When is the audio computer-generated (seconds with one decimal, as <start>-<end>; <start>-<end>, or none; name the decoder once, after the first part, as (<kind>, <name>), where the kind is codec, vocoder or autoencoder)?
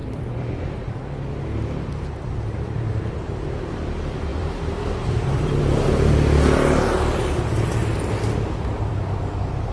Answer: 0.0-0.5 (vocoder, BigVGAN v2); 4.3-5.4